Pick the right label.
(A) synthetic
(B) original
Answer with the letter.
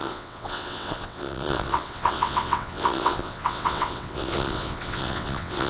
A